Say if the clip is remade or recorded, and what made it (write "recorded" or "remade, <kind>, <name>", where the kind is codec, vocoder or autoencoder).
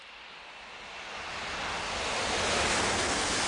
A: recorded